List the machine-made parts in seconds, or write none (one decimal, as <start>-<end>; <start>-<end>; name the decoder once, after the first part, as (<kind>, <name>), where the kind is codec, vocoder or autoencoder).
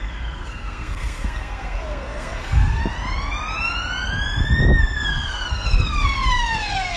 0.0-2.8 (codec, SNAC); 4.8-7.0